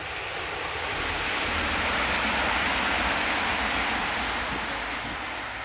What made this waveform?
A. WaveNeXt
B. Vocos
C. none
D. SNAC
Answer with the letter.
C